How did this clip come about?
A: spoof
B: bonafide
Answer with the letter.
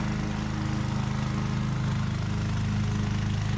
B